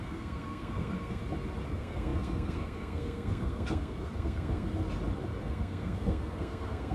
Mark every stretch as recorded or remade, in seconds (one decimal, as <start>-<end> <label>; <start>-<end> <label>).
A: 0.0-1.2 remade; 1.2-1.7 recorded; 1.7-4.7 remade; 4.7-5.4 recorded; 5.4-6.9 remade